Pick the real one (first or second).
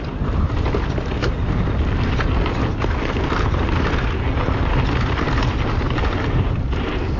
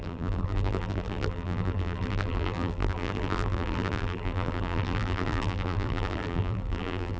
first